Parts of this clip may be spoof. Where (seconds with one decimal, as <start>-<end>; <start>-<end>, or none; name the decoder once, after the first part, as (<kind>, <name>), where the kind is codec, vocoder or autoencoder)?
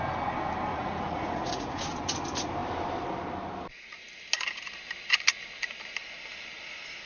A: 0.7-1.8 (vocoder, Vocos)